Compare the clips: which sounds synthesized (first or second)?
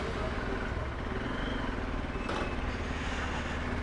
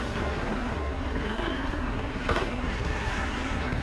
second